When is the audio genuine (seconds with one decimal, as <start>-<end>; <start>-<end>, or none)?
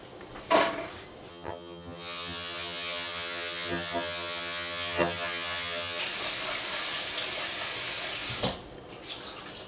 0.0-1.3; 6.0-9.7